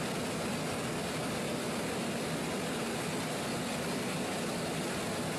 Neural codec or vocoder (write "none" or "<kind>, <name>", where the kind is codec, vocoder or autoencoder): none